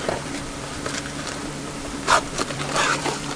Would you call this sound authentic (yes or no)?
no